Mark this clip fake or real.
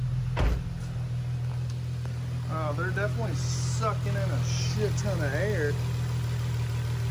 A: real